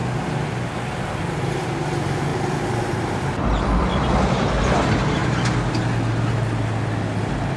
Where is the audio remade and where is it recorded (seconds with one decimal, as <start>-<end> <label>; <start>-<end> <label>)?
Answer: 0.0-2.3 recorded; 2.3-3.4 remade; 3.4-7.6 recorded